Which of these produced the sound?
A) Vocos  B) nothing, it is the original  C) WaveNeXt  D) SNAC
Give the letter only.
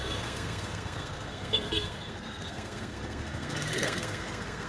D